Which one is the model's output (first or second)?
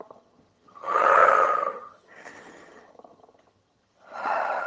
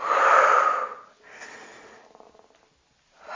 first